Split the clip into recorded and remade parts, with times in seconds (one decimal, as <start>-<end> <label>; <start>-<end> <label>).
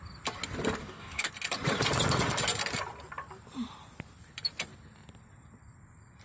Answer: 0.0-0.8 recorded; 0.8-1.3 remade; 1.3-6.2 recorded